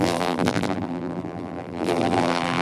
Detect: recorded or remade remade